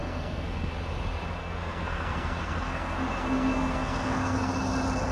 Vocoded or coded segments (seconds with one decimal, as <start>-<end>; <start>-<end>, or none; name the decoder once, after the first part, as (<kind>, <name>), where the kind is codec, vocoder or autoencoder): 0.0-0.7 (codec, SNAC); 1.4-4.5